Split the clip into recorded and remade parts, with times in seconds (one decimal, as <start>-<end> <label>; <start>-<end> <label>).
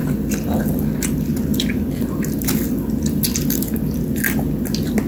0.0-5.1 recorded